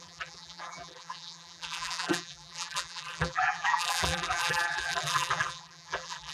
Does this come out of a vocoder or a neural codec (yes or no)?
yes